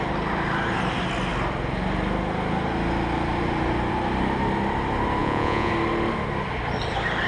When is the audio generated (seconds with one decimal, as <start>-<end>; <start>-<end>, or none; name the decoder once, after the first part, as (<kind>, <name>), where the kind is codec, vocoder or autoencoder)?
5.2-5.7 (vocoder, Vocos)

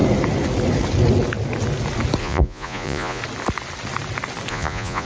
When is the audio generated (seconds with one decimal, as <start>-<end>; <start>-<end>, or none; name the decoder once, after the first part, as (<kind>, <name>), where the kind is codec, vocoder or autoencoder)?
2.2-3.2 (vocoder, Vocos); 4.5-5.0

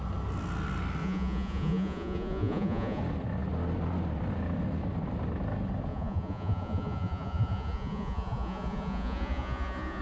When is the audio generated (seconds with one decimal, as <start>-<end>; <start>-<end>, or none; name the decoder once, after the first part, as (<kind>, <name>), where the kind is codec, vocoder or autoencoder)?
1.0-3.0 (vocoder, Vocos); 5.9-10.0

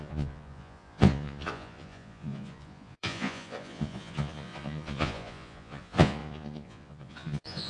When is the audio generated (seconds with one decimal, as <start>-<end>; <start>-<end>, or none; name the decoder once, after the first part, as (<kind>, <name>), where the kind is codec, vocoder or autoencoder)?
0.0-7.7 (vocoder, Vocos)